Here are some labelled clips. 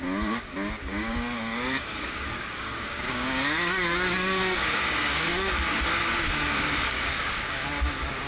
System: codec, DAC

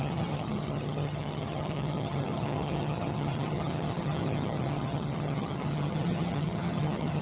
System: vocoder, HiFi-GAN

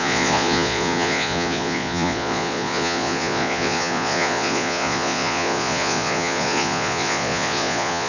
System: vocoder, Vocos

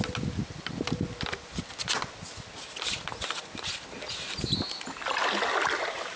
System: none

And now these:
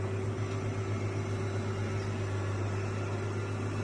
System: none